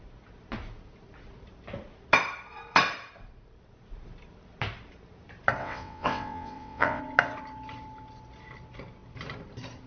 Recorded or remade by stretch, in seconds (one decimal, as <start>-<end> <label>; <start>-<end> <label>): 0.0-5.6 recorded; 5.6-7.0 remade; 7.0-9.9 recorded